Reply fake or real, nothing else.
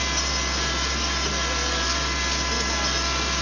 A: real